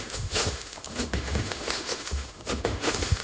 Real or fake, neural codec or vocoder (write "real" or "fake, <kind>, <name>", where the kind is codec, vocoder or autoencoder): fake, autoencoder, DAC-VAE